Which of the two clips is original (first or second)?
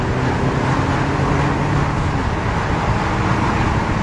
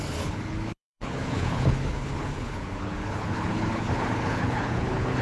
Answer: first